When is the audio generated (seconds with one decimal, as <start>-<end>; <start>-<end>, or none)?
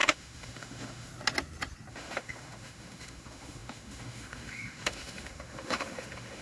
0.0-1.1; 1.9-6.4